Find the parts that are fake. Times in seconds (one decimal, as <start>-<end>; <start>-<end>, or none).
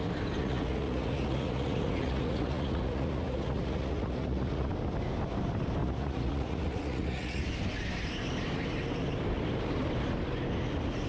0.4-4.7; 5.8-7.4